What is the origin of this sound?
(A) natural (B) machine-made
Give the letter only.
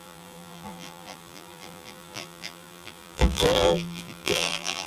B